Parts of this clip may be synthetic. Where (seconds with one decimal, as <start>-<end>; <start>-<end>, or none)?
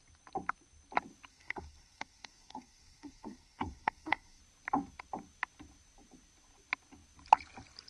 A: 1.3-4.4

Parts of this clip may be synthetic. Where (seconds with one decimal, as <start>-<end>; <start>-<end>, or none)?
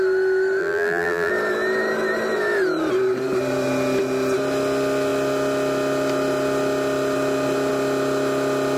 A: 0.6-1.3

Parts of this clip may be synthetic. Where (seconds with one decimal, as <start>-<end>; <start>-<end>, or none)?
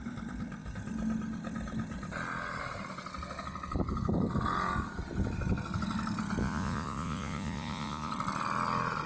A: 6.4-8.1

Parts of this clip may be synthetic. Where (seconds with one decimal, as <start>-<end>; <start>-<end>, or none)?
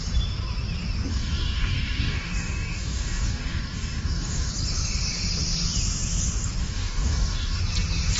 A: 1.1-4.5; 6.6-7.6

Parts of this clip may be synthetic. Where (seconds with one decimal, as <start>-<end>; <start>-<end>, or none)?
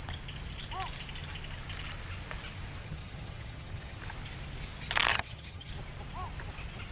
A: 2.8-4.0; 5.1-5.7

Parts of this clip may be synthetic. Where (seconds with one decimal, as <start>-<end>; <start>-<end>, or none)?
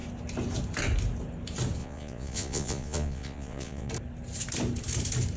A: 1.8-3.9